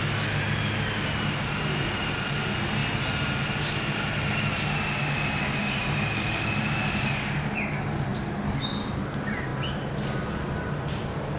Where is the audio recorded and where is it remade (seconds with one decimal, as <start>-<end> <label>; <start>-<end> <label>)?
0.0-11.4 recorded